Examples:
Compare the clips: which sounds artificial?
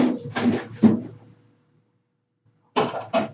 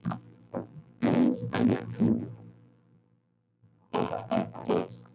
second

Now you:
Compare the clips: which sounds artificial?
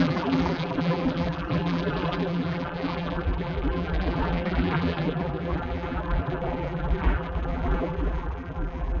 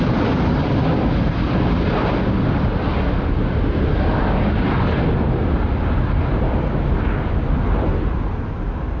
first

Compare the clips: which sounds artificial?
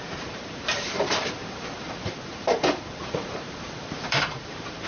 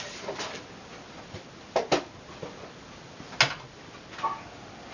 first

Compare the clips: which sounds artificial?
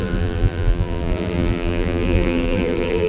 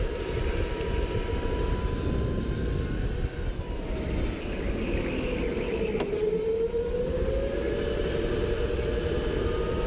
first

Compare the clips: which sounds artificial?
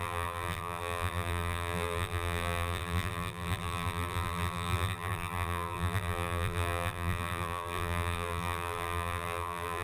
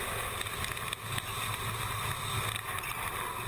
first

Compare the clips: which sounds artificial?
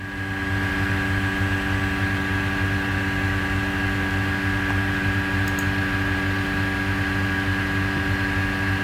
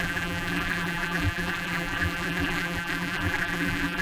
second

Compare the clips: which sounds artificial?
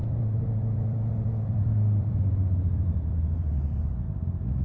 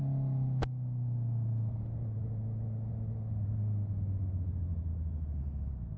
first